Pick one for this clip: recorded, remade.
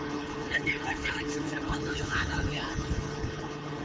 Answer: remade